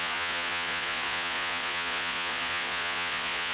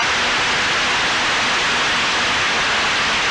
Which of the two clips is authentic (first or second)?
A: second